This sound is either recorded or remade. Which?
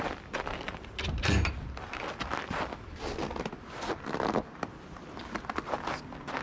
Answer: recorded